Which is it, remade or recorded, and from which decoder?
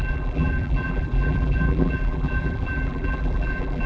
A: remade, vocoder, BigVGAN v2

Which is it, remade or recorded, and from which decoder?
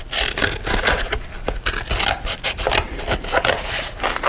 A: recorded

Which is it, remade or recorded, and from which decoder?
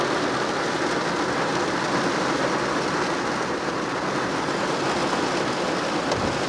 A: recorded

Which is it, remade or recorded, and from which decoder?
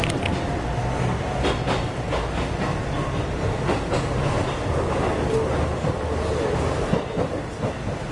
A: recorded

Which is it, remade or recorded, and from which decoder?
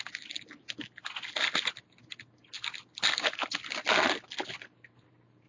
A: recorded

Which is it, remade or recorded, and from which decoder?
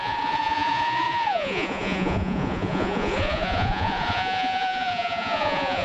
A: remade, vocoder, Vocos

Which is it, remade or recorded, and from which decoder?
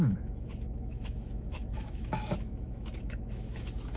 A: remade, autoencoder, DAC-VAE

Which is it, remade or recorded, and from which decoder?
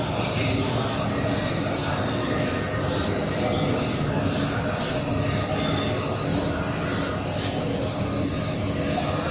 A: recorded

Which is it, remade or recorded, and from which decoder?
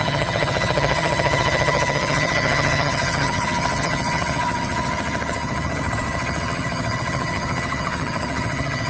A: remade, vocoder, HiFi-GAN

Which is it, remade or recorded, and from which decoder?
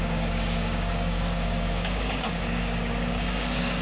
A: remade, codec, DAC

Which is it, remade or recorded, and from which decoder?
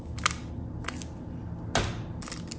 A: recorded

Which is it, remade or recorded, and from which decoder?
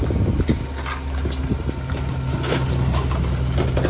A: recorded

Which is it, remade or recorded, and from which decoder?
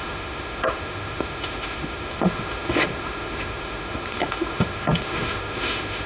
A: remade, autoencoder, DAC-VAE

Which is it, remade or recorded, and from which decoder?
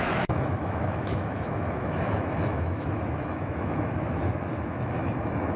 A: remade, autoencoder, DAC-VAE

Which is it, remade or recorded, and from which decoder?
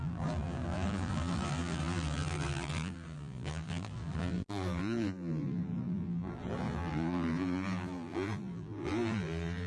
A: remade, vocoder, BigVGAN v2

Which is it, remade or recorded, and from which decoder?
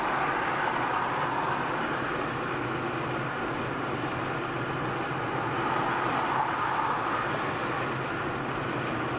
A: recorded